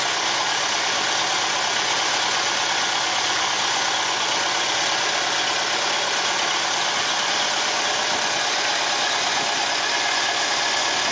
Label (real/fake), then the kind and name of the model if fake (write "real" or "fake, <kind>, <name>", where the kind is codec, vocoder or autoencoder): fake, vocoder, Vocos